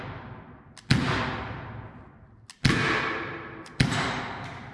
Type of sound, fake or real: real